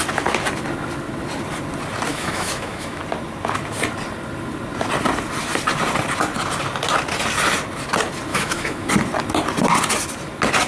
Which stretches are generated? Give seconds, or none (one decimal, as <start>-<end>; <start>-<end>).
2.1-3.0; 8.3-8.9